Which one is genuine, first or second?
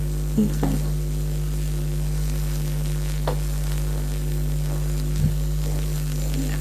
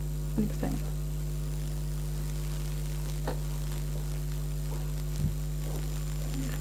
second